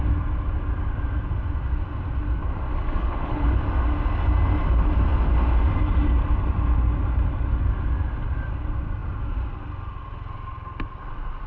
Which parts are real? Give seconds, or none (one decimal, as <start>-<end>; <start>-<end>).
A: 0.0-3.0; 3.6-11.5